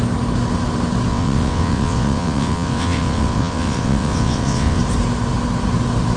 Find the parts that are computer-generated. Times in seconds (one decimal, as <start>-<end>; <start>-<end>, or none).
1.1-4.8